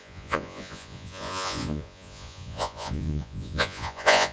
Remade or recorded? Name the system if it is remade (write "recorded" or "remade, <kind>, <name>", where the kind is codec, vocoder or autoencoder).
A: remade, vocoder, Vocos